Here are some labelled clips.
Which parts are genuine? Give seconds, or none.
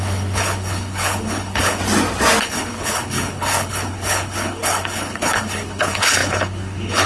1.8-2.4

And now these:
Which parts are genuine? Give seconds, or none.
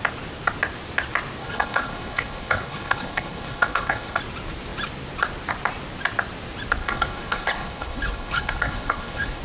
0.0-1.4; 4.2-6.8